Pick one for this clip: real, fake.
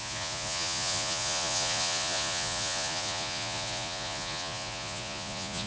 fake